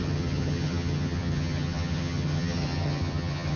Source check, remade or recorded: remade